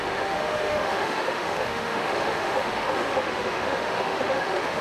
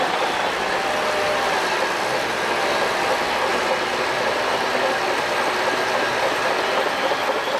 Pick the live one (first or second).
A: second